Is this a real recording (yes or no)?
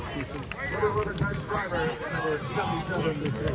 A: yes